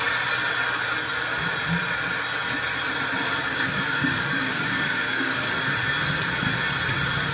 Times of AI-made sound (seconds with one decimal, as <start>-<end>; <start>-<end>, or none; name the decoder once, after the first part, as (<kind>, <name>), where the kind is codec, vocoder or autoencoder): 3.5-5.5 (codec, DAC)

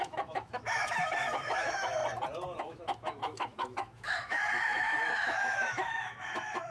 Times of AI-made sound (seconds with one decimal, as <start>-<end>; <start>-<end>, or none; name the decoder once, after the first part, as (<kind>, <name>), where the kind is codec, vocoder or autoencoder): 0.0-2.0 (autoencoder, DAC-VAE); 2.6-6.7

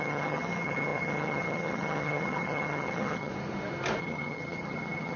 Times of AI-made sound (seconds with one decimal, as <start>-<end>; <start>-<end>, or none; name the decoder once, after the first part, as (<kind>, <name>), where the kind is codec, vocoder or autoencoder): 0.0-3.3 (vocoder, HiFi-GAN); 4.0-5.2